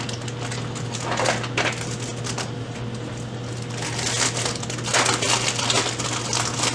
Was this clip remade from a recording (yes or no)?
no